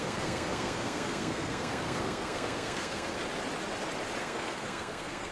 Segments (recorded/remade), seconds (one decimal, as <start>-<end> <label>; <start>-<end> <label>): 0.0-3.2 remade; 3.2-4.2 recorded; 4.2-5.3 remade